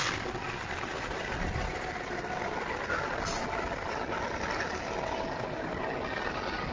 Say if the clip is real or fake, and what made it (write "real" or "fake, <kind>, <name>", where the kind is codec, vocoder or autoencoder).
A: real